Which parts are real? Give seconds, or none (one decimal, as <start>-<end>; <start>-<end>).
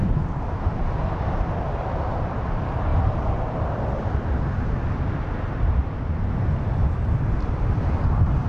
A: 0.0-8.5